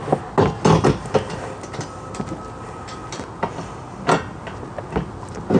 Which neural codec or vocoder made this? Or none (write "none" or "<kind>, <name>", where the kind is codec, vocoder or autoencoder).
none